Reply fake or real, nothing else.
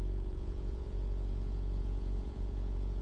fake